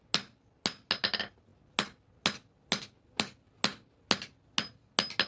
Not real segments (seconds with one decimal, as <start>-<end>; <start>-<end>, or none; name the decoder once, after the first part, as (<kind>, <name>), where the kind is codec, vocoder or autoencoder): none